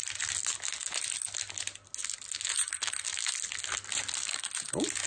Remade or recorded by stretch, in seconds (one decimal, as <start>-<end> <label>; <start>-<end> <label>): 0.0-5.1 recorded